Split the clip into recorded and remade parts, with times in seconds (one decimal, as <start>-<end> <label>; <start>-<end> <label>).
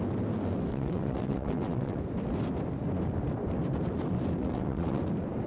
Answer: 0.0-0.7 recorded; 0.7-2.0 remade; 2.0-4.4 recorded; 4.4-5.0 remade; 5.0-5.5 recorded